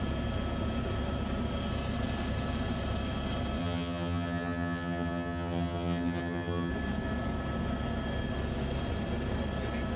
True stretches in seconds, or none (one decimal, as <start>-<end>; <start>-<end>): 0.0-3.6; 6.7-10.0